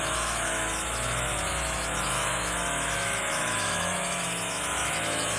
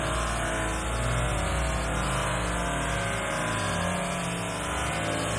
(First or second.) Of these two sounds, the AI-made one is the first